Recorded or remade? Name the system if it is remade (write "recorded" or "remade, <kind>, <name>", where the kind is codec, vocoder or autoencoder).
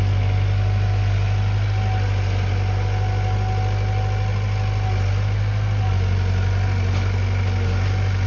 recorded